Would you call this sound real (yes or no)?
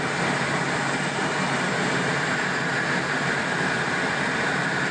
no